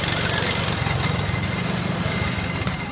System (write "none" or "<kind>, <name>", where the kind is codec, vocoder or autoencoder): none